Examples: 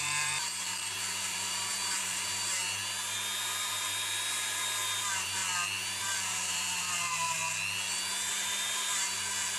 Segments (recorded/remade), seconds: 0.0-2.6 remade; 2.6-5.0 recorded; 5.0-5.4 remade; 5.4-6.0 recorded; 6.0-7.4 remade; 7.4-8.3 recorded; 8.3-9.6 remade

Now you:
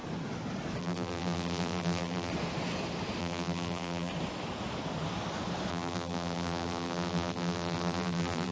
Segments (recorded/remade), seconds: 0.0-0.8 recorded; 0.8-2.3 remade; 2.3-3.2 recorded; 3.2-4.1 remade; 4.1-5.7 recorded; 5.7-8.5 remade

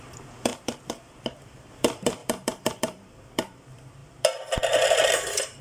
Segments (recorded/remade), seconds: 0.0-5.6 remade

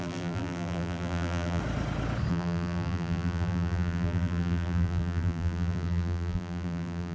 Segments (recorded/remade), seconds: 0.0-1.6 remade; 1.6-2.3 recorded; 2.3-7.1 remade

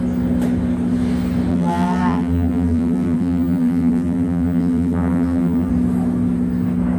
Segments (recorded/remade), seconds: 0.0-1.5 recorded; 1.5-5.7 remade; 5.7-7.0 recorded

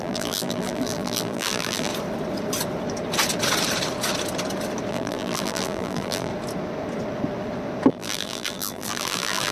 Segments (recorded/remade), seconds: 0.0-1.9 remade; 1.9-4.9 recorded; 4.9-6.3 remade; 6.3-7.9 recorded; 7.9-9.5 remade

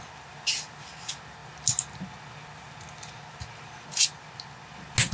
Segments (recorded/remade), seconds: 0.0-5.1 recorded